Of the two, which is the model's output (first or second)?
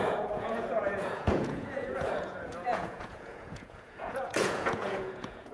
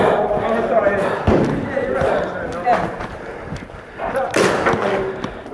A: first